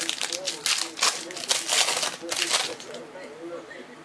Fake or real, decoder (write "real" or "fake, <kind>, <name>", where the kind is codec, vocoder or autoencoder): real